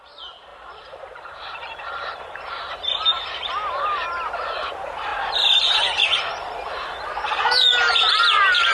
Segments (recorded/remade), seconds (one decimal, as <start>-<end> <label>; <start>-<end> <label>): 0.0-5.1 remade; 5.1-5.6 recorded; 5.6-8.7 remade